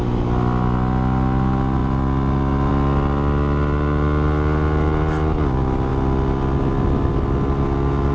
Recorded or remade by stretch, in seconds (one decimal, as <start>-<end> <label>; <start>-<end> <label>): 0.0-8.1 recorded